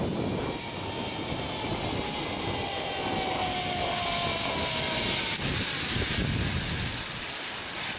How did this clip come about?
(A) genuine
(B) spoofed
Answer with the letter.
A